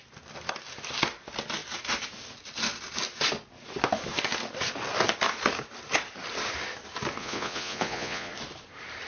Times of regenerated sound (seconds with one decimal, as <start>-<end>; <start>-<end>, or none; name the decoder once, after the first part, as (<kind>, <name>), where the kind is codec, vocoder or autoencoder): 7.2-8.3 (vocoder, Vocos)